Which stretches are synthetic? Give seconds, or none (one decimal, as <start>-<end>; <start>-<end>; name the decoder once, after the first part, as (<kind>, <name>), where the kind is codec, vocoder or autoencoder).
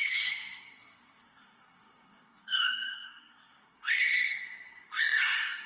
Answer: 0.0-5.7 (codec, SNAC)